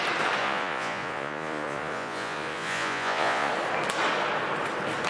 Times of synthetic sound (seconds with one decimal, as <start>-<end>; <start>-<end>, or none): 0.4-3.5